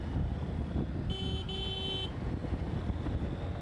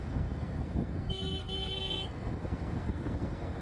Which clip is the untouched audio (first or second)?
first